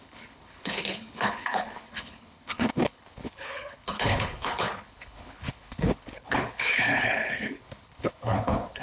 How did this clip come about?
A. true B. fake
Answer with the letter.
B